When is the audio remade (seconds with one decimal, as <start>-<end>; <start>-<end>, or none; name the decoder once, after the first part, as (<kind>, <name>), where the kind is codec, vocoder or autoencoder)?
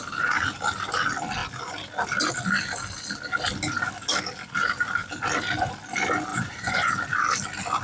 6.3-6.9 (vocoder, Vocos)